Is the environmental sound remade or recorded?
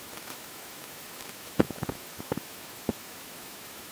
remade